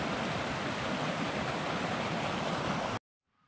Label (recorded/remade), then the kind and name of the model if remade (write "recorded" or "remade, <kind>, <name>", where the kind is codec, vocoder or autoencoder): recorded